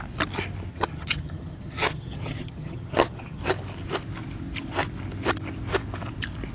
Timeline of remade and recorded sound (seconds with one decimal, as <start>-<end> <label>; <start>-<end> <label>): 0.0-0.7 recorded; 0.7-3.4 remade; 3.4-6.5 recorded